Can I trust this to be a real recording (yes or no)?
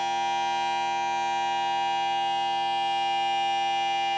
yes